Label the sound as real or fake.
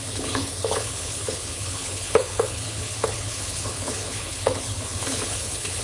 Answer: fake